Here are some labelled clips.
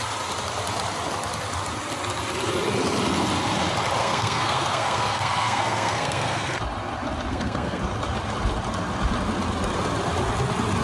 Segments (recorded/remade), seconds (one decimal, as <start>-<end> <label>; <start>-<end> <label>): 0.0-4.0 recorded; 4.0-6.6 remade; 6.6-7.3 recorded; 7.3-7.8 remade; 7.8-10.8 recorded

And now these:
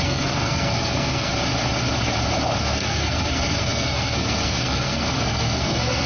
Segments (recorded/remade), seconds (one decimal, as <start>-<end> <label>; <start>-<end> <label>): 0.0-1.3 remade; 1.3-2.6 recorded; 2.6-6.1 remade

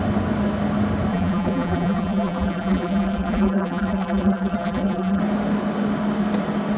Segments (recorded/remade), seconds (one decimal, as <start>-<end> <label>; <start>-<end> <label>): 0.0-1.1 recorded; 1.1-5.2 remade; 5.2-6.8 recorded

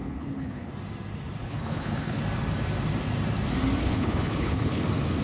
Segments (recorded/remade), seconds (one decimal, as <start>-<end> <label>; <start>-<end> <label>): 0.0-0.7 remade; 0.7-1.4 recorded; 1.4-2.2 remade; 2.2-3.8 recorded; 3.8-4.8 remade; 4.8-5.2 recorded

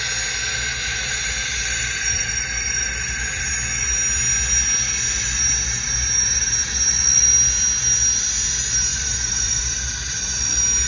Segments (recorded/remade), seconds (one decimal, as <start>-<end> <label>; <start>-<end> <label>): 0.0-0.7 recorded; 0.7-3.2 remade; 3.2-8.9 recorded; 8.9-9.6 remade; 9.6-10.9 recorded

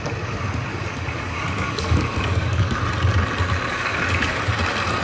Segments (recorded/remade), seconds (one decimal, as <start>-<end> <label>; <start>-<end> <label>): 0.0-0.7 recorded; 0.7-2.8 remade; 2.8-3.7 recorded; 3.7-4.4 remade; 4.4-5.0 recorded

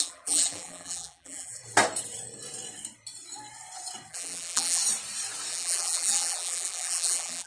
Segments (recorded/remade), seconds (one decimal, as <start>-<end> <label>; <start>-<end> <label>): 0.0-1.6 remade; 1.6-4.1 recorded; 4.1-4.8 remade; 4.8-5.5 recorded; 5.5-7.5 remade

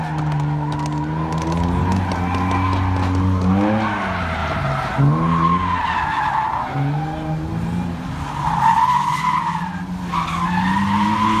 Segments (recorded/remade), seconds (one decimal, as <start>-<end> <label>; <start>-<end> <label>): 0.0-11.4 recorded